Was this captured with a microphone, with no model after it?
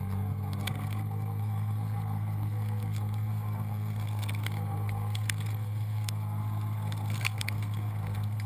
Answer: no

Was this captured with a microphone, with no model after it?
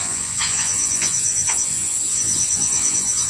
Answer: no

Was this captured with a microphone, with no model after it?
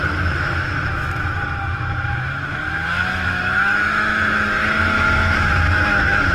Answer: no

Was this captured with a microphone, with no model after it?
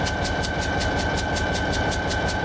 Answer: yes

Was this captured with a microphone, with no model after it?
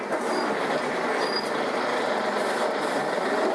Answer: yes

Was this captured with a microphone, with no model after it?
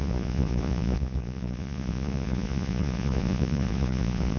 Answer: no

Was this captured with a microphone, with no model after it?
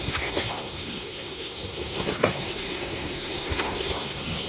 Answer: no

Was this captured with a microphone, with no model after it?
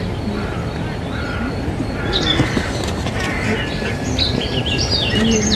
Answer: yes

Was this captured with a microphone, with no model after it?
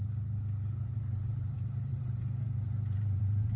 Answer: no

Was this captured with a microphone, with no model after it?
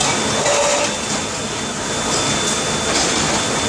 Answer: yes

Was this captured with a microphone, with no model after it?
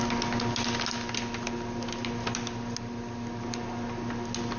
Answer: yes